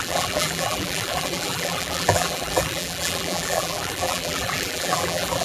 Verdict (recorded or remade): remade